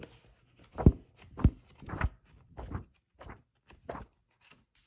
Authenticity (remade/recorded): recorded